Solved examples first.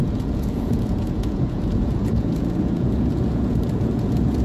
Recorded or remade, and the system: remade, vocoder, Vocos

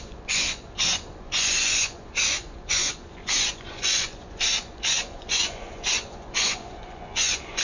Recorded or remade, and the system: remade, vocoder, Vocos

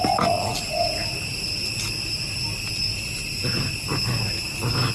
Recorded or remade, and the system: recorded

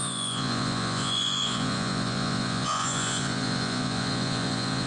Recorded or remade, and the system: remade, vocoder, Vocos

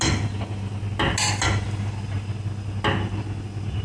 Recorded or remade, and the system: recorded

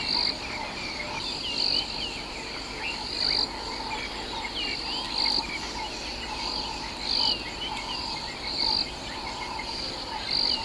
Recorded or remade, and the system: recorded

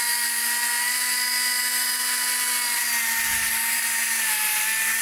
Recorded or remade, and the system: recorded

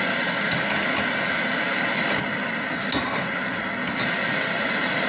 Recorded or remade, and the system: recorded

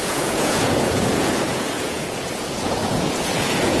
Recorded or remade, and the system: remade, vocoder, Vocos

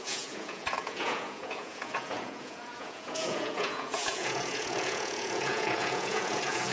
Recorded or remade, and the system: remade, vocoder, Vocos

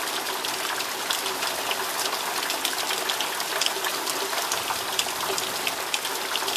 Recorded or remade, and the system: recorded